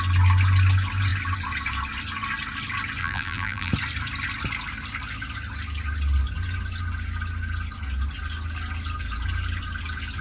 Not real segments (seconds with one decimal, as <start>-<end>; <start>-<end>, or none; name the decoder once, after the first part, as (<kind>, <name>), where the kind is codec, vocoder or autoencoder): 3.0-3.7 (vocoder, BigVGAN v2)